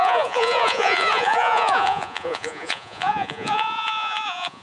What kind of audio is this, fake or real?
fake